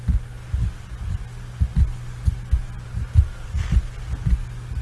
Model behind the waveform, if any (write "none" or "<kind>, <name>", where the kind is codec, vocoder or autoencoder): none